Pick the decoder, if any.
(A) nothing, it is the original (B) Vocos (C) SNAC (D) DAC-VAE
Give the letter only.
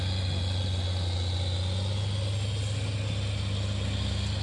A